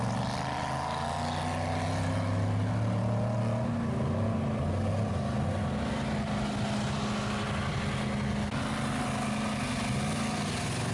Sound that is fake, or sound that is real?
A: real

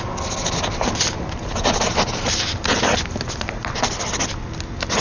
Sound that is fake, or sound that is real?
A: real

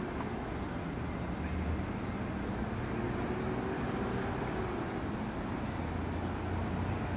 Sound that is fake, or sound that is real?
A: real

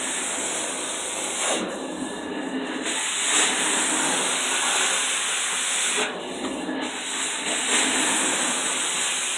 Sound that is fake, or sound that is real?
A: real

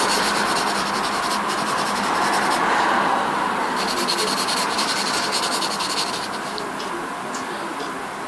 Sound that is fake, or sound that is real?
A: real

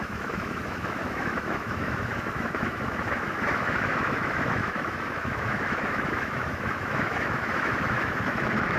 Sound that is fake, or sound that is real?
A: fake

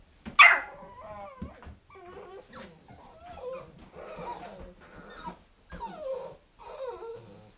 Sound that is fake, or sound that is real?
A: real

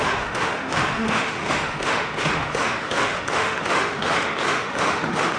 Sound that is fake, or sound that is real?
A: fake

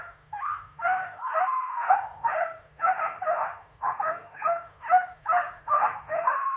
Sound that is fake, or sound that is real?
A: fake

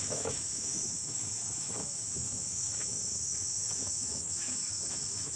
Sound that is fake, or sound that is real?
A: fake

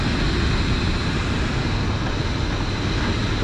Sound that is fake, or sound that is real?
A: real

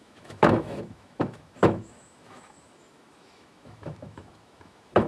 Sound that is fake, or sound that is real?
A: fake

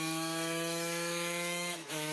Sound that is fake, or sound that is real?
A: fake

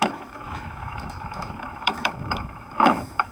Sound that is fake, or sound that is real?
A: fake